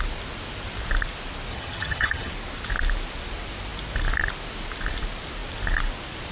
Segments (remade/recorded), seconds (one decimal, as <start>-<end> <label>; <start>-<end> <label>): 0.0-1.5 recorded; 1.5-2.3 remade; 2.3-6.3 recorded